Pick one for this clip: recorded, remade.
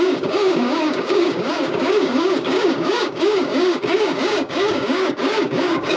remade